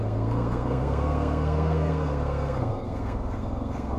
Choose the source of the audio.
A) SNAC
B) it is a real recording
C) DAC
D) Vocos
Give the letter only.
A